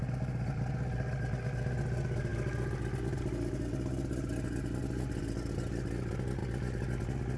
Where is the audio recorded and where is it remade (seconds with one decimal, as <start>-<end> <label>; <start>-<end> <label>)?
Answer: 0.0-7.4 recorded